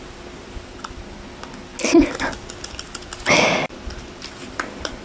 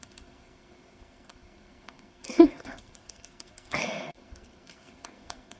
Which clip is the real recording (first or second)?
first